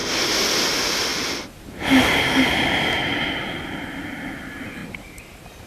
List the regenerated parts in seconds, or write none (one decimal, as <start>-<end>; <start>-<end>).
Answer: 1.1-3.3; 4.8-5.7